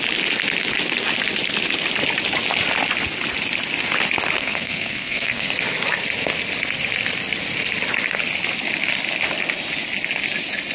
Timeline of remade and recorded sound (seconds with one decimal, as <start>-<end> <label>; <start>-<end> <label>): 0.0-4.4 recorded; 4.4-5.5 remade; 5.5-10.7 recorded